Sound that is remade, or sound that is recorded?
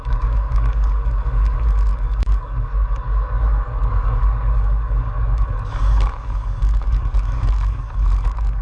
remade